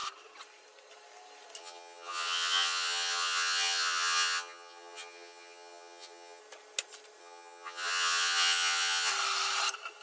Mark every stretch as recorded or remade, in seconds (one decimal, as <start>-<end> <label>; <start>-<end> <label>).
0.0-1.6 recorded; 1.6-6.4 remade; 6.4-7.2 recorded; 7.2-9.1 remade; 9.1-10.0 recorded